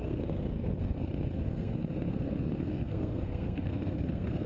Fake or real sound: fake